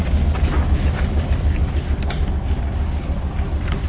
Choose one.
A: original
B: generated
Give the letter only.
A